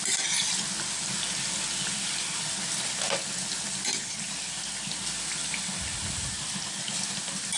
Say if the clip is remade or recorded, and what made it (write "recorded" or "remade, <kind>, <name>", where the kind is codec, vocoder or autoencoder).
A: recorded